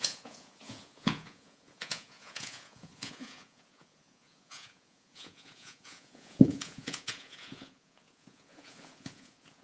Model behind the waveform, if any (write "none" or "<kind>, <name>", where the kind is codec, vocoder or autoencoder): vocoder, Vocos